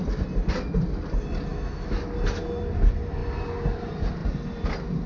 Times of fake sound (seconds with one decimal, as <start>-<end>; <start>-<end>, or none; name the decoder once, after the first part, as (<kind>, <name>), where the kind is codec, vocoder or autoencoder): 1.5-2.0 (autoencoder, DAC-VAE)